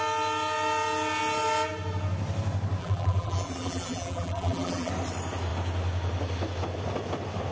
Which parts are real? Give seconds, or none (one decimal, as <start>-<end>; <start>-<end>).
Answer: 0.0-2.8; 4.9-7.5